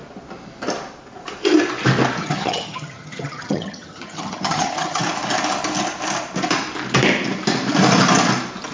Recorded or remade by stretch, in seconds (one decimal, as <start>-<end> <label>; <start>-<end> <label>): 0.0-2.2 recorded; 2.2-5.0 remade; 5.0-8.7 recorded